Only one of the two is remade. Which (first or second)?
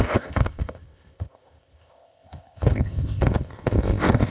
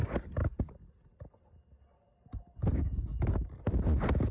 first